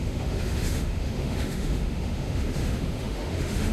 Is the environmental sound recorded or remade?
remade